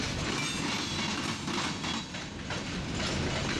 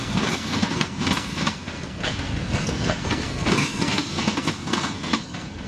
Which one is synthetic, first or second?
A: second